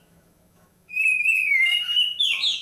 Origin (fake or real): fake